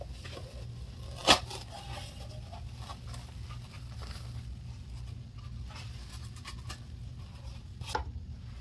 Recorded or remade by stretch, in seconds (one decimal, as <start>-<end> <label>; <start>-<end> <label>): 0.0-8.6 recorded